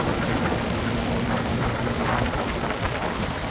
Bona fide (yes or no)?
no